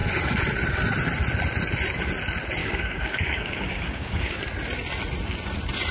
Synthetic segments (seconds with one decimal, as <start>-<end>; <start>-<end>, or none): 2.6-4.4